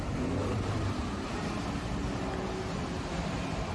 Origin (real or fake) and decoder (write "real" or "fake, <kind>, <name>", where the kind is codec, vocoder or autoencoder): real